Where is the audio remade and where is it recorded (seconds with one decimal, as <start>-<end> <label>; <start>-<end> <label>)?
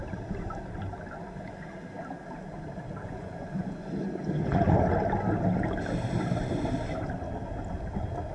0.0-3.0 recorded; 3.0-4.9 remade; 4.9-8.3 recorded